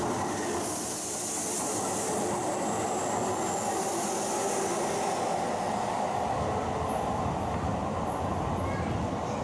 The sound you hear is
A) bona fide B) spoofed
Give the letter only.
A